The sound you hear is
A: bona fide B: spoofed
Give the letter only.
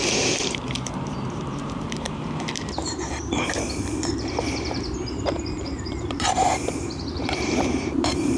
B